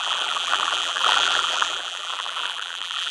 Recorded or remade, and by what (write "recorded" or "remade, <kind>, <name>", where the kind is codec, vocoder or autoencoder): remade, vocoder, BigVGAN v2